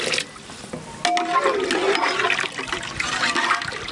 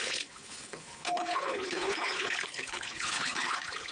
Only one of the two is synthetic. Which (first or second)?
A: second